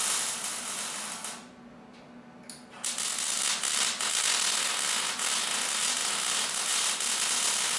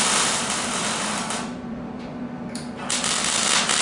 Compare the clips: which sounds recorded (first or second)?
first